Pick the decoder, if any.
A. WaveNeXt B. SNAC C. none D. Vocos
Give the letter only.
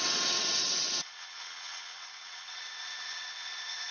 A